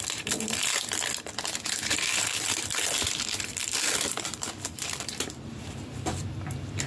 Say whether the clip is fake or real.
fake